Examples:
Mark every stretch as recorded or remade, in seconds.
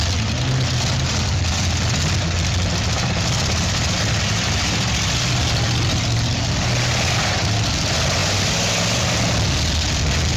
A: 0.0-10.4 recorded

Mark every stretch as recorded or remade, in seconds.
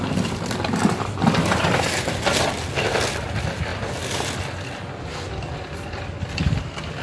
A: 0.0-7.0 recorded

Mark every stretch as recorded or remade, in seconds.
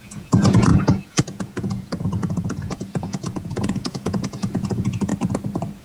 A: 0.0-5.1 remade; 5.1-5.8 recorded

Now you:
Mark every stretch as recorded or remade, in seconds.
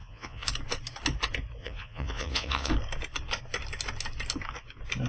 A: 0.0-0.5 remade; 0.5-1.6 recorded; 1.6-2.7 remade; 2.7-5.1 recorded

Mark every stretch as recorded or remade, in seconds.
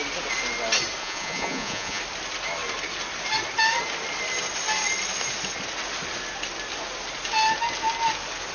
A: 0.0-1.0 recorded; 1.0-2.0 remade; 2.0-8.5 recorded